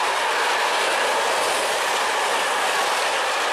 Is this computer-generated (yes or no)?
no